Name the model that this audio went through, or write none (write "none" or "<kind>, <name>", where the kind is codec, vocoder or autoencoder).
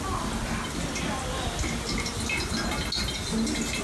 none